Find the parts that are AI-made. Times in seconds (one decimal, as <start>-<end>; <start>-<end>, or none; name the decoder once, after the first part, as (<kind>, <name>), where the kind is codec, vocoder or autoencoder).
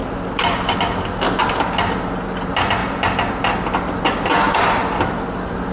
none